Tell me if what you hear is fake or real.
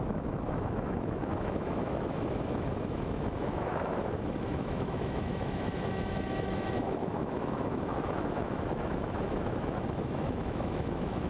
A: fake